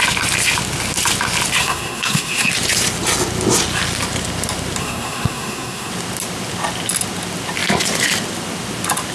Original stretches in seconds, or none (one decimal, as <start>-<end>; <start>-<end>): 0.0-1.6; 2.5-4.8; 5.9-9.1

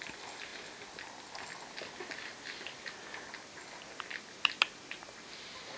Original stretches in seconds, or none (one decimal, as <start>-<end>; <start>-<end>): 0.0-5.8